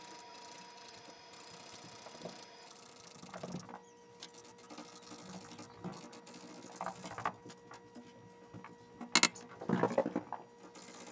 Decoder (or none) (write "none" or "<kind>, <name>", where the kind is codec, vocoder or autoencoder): none